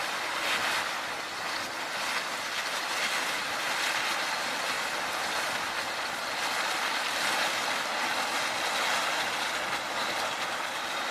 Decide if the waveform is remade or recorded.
recorded